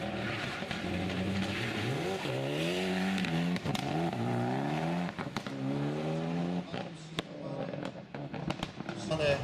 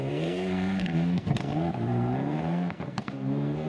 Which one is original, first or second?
first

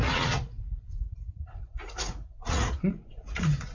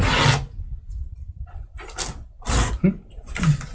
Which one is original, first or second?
second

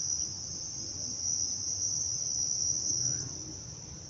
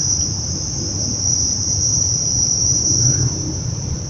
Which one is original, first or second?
first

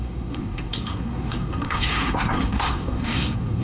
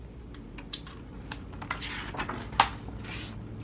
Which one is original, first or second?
second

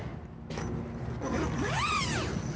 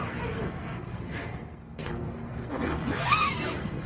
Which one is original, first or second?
first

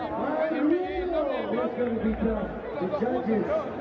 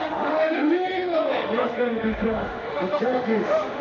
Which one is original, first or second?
first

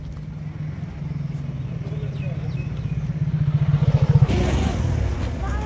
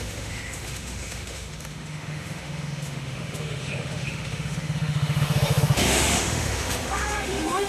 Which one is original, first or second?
first